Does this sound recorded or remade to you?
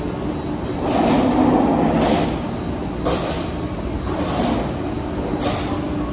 recorded